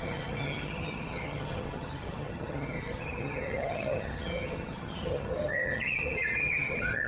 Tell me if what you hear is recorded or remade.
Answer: remade